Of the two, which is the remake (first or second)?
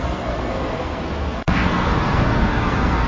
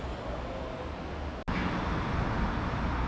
first